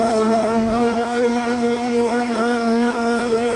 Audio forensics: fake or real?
fake